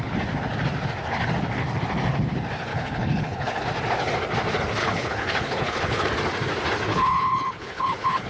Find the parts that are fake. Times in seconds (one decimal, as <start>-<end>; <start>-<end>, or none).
2.7-3.6; 4.8-6.1; 6.9-8.3